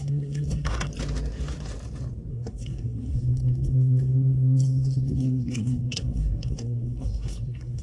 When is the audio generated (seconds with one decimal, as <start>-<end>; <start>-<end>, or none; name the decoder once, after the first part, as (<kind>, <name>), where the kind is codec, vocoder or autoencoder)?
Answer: 0.0-0.9 (codec, SNAC); 2.3-7.8